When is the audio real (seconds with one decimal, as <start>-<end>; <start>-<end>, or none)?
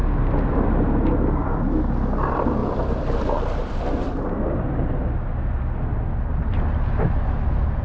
0.0-2.6; 4.9-7.8